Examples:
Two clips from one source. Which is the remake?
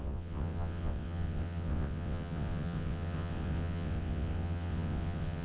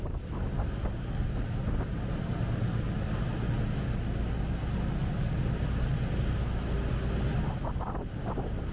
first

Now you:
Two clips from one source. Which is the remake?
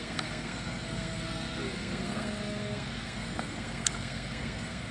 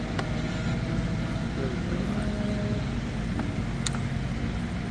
first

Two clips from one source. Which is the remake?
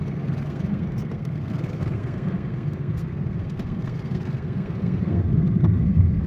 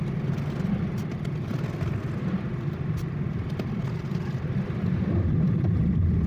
first